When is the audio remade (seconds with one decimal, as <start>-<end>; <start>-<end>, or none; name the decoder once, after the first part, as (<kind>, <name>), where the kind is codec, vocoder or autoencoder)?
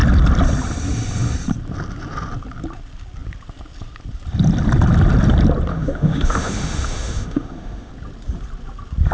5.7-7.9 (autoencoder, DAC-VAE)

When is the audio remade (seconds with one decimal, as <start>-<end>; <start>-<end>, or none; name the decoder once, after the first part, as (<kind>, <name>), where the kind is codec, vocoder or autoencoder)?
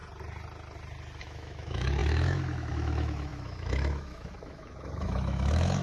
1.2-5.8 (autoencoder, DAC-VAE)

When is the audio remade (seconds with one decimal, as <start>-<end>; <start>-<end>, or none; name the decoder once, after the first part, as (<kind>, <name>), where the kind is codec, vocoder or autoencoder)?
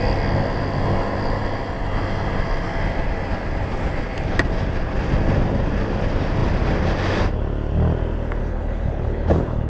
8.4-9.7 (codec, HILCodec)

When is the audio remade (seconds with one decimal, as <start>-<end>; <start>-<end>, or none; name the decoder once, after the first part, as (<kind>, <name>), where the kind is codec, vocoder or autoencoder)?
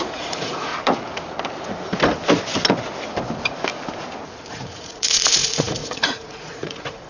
0.0-0.7 (vocoder, Vocos); 4.5-7.1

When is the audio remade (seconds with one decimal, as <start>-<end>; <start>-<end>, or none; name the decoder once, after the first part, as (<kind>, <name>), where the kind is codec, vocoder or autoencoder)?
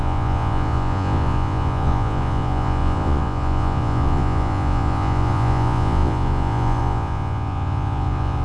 0.0-8.4 (vocoder, Vocos)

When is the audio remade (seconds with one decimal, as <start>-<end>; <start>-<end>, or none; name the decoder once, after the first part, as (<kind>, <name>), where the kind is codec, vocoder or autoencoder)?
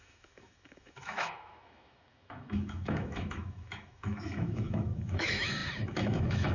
0.0-6.5 (autoencoder, DAC-VAE)